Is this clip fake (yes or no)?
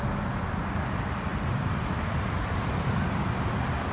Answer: no